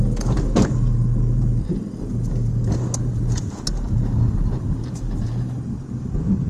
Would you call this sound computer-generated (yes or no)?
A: no